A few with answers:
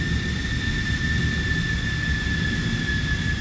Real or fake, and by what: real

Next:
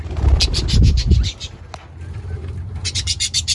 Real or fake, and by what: real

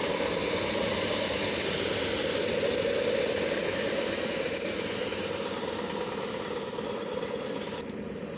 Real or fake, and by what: real